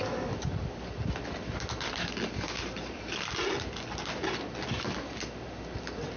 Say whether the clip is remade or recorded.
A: recorded